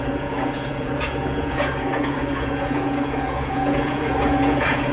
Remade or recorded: remade